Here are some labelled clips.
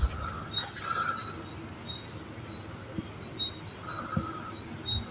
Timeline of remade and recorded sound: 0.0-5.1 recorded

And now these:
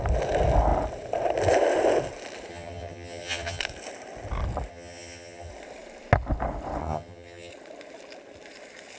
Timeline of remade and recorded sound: 0.0-2.5 recorded; 2.5-3.6 remade; 3.6-4.7 recorded; 4.7-5.5 remade; 5.5-6.8 recorded; 6.8-7.5 remade; 7.5-9.0 recorded

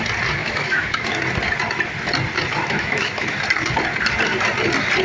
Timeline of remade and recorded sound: 0.0-0.4 recorded; 0.4-1.2 remade; 1.2-2.6 recorded; 2.6-3.4 remade; 3.4-5.0 recorded